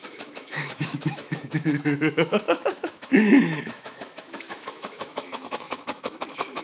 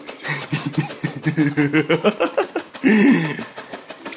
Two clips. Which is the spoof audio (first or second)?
first